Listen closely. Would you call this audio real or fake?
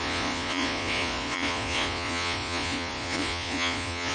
fake